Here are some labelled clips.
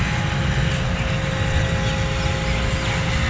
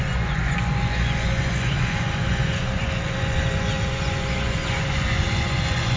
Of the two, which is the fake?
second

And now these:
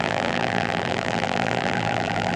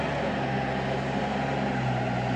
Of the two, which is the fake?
first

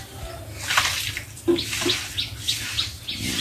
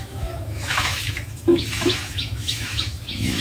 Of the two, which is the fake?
second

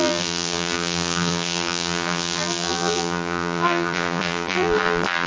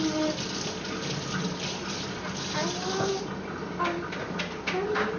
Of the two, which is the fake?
first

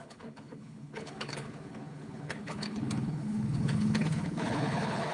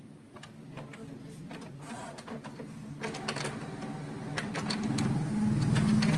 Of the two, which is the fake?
first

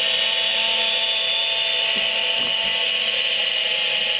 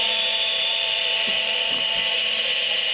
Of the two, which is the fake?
second